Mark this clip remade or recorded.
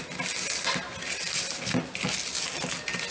recorded